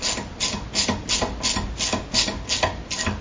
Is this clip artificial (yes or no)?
no